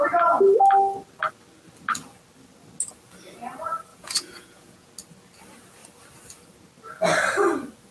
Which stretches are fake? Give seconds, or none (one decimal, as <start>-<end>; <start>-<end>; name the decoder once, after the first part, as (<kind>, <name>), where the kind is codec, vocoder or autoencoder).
3.9-4.9 (vocoder, Vocos)